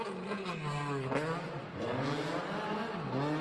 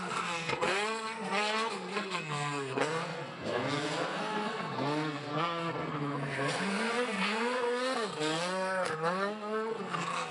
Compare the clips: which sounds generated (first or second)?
second